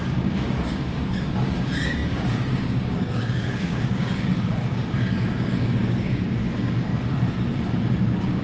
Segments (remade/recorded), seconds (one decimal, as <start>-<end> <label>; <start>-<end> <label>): 0.0-6.9 remade; 6.9-8.0 recorded; 8.0-8.4 remade